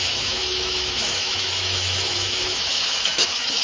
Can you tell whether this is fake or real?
fake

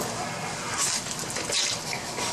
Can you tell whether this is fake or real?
real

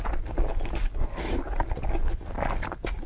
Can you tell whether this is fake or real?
real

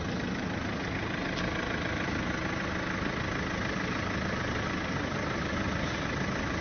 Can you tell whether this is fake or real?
real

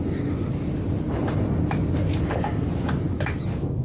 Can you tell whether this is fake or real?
real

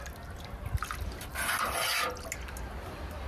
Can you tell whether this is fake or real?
real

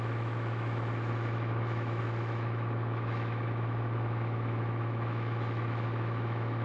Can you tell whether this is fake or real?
fake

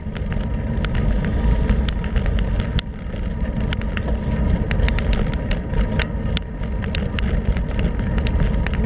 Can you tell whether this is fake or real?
real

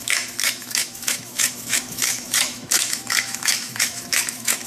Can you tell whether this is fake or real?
fake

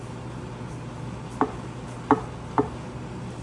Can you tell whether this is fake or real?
real